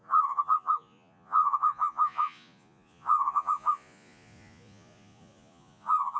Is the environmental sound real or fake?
fake